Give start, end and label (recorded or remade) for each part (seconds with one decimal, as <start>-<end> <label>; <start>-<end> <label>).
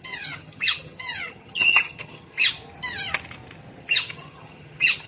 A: 0.0-2.5 remade; 2.5-3.8 recorded; 3.8-5.1 remade